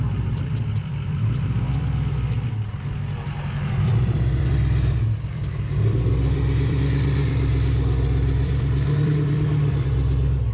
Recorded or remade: remade